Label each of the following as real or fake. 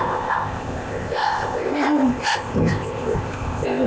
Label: fake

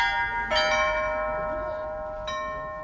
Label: real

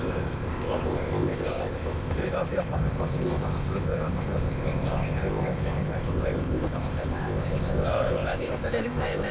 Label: fake